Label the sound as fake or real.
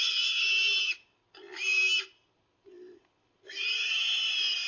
real